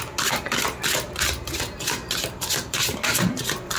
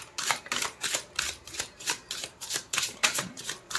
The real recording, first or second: first